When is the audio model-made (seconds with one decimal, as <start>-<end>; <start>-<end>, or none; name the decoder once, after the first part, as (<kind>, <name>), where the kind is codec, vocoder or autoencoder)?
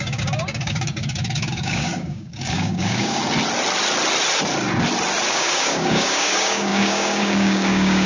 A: 0.0-3.2 (codec, DAC); 5.3-8.1